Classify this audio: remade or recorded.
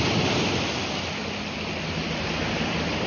recorded